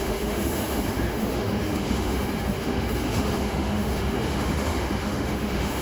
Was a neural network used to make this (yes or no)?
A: yes